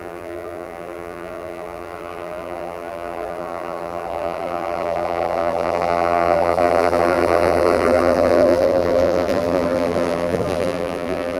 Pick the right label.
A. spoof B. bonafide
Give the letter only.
A